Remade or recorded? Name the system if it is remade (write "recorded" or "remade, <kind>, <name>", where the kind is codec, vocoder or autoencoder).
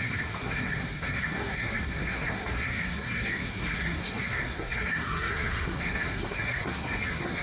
remade, codec, SNAC